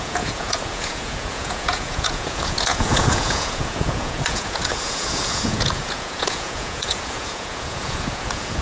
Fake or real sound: fake